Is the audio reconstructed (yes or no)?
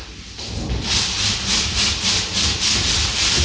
no